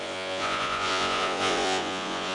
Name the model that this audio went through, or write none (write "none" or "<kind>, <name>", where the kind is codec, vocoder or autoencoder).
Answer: vocoder, Vocos